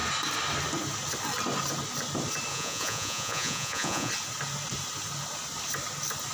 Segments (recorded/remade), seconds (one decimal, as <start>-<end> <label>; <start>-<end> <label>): 0.0-2.5 recorded; 2.5-4.1 remade; 4.1-6.3 recorded